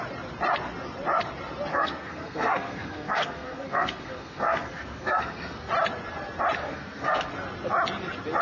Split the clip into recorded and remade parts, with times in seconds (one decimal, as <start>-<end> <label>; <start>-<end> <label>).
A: 0.0-1.7 recorded; 1.7-5.7 remade; 5.7-6.7 recorded; 6.7-7.3 remade; 7.3-8.4 recorded